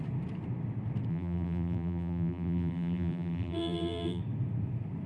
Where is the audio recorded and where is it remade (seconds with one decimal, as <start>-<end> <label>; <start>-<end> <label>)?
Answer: 0.0-1.1 recorded; 1.1-4.2 remade; 4.2-5.1 recorded